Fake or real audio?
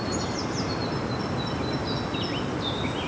real